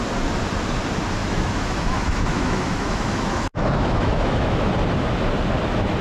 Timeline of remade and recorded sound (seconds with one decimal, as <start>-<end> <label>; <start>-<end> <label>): 0.0-1.2 recorded; 1.2-4.7 remade; 4.7-6.0 recorded